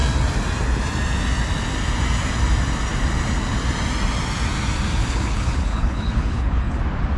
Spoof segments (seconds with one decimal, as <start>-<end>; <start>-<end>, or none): 5.0-6.8